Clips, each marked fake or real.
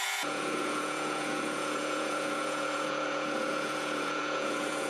fake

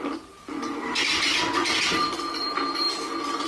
real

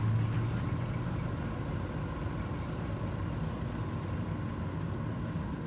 real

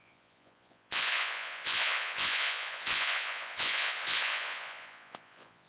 fake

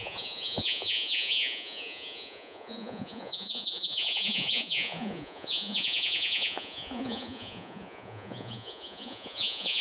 fake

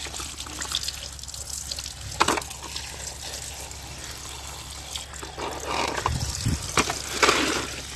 real